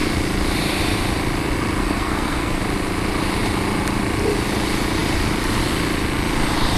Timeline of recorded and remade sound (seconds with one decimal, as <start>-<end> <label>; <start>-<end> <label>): 0.0-1.8 recorded; 1.8-2.6 remade; 2.6-6.8 recorded